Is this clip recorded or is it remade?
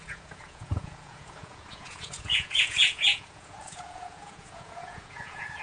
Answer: remade